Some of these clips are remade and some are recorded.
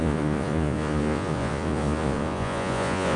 remade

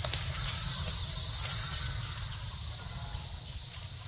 recorded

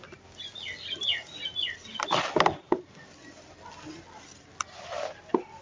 recorded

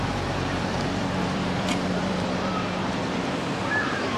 remade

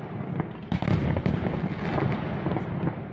recorded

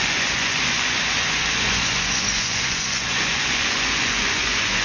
remade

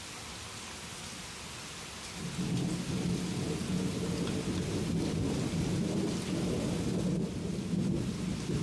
recorded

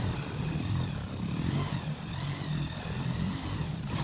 recorded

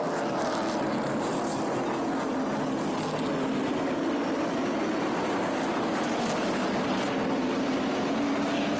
recorded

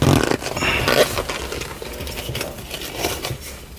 recorded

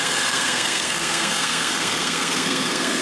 remade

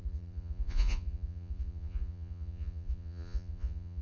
remade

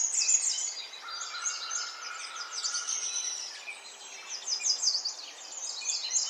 recorded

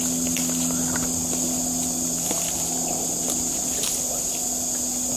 recorded